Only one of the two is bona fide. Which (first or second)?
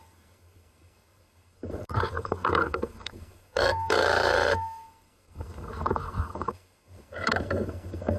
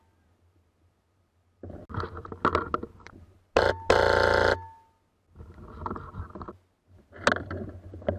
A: second